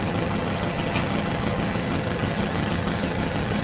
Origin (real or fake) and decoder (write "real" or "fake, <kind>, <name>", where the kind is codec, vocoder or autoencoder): fake, vocoder, HiFi-GAN